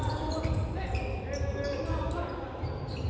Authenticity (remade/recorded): recorded